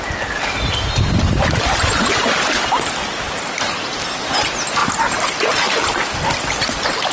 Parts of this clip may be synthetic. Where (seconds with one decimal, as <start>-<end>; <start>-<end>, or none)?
4.8-5.9